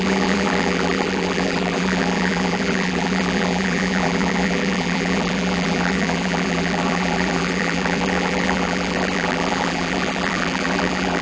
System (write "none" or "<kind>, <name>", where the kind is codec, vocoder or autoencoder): vocoder, BigVGAN v2